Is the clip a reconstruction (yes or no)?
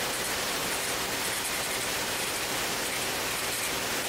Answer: yes